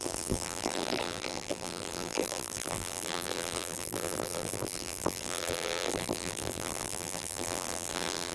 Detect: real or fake fake